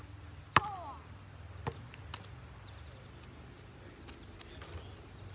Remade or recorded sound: recorded